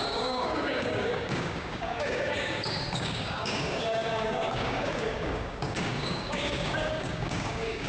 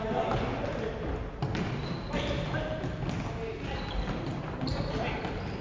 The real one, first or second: second